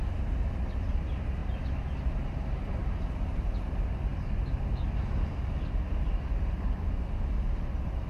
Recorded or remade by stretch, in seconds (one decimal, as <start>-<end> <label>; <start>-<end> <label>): 0.0-8.1 recorded